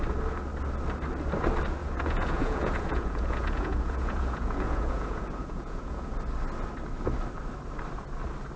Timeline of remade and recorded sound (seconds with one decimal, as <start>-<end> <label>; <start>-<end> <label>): 0.0-1.8 recorded; 1.8-6.1 remade; 6.1-8.6 recorded